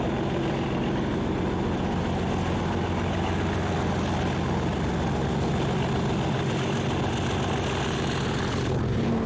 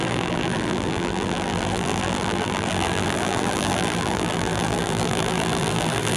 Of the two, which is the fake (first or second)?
second